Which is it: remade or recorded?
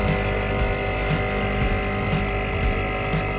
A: recorded